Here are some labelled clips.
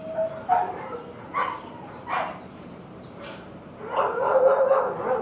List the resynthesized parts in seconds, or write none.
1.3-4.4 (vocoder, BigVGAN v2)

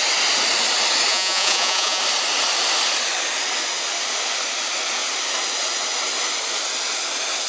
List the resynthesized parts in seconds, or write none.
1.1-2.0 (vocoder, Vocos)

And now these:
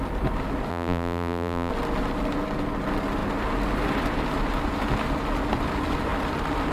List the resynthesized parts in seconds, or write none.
0.7-1.7 (vocoder, BigVGAN v2)